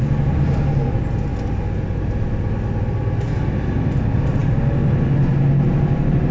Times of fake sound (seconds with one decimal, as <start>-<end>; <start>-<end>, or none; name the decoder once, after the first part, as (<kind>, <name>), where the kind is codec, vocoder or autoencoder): none